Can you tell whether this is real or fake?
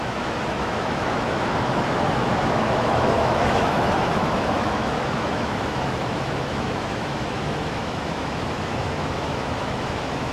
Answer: fake